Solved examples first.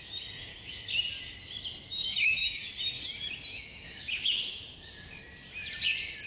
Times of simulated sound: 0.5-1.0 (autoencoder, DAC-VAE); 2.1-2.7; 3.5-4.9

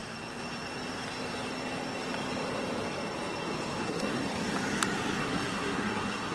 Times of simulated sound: 3.8-4.2 (codec, SNAC); 5.2-6.3

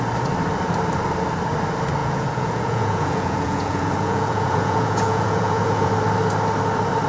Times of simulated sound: 2.0-5.9 (vocoder, Vocos)

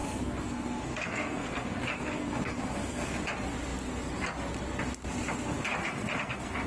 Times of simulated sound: 0.0-3.2 (codec, SNAC); 5.8-6.7

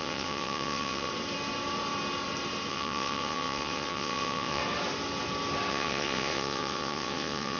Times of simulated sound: 0.0-1.1 (vocoder, WaveNeXt); 2.7-4.6; 5.7-7.6

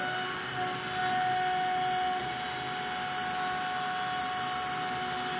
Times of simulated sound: none

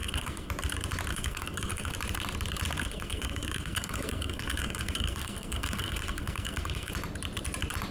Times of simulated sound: 0.0-0.5 (codec, SNAC); 1.1-1.9; 2.8-6.9